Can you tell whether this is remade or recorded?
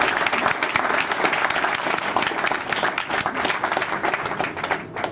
recorded